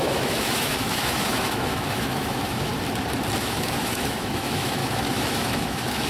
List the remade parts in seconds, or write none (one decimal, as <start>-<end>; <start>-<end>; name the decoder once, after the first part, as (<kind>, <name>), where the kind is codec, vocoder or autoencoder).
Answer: 0.0-2.7 (autoencoder, DAC-VAE); 3.4-6.1